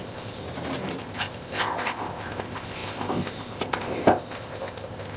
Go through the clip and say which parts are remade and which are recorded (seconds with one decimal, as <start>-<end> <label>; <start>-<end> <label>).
0.0-0.4 remade; 0.4-1.0 recorded; 1.0-5.2 remade